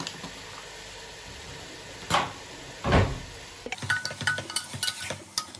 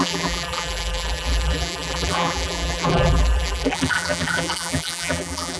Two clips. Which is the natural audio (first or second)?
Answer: first